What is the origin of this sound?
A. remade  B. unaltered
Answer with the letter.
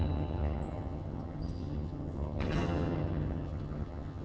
A